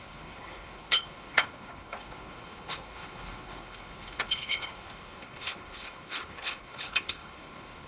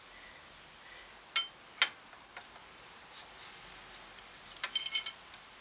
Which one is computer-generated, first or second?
first